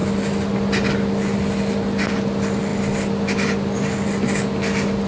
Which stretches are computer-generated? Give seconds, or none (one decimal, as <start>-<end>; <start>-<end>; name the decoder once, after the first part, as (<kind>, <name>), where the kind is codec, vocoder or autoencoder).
none